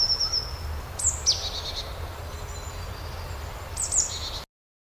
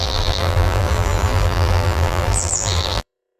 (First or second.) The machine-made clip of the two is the second